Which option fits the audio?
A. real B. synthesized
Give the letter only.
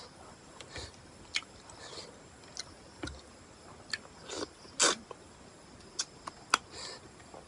A